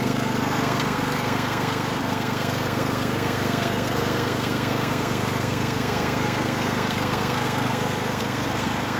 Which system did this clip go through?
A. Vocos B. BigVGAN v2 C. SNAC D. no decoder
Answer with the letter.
C